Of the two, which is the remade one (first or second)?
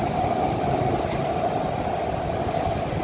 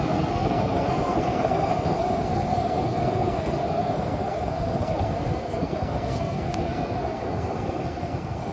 second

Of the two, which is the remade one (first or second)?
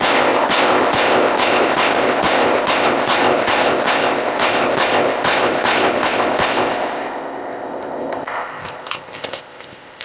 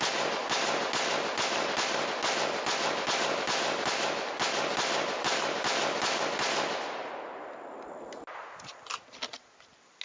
first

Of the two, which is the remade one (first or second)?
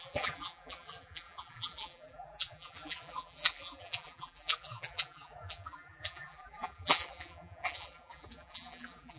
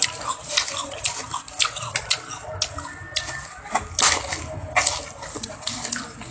first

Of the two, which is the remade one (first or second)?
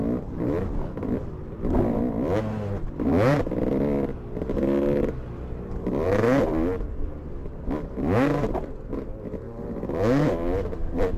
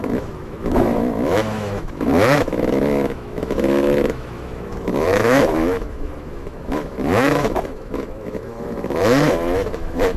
second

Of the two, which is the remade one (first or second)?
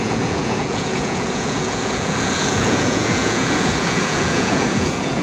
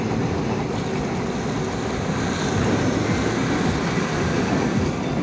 first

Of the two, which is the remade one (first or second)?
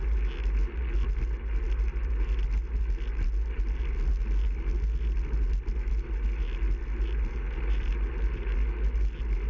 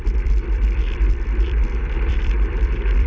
second